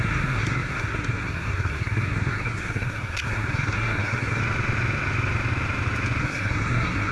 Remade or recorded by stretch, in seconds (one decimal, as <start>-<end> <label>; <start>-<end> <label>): 0.0-4.4 remade; 4.4-6.2 recorded; 6.2-7.1 remade